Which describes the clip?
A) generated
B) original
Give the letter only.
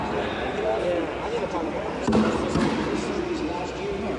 B